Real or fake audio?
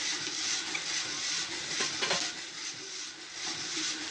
real